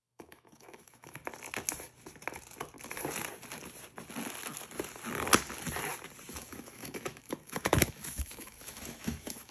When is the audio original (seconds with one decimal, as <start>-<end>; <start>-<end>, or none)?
1.2-6.3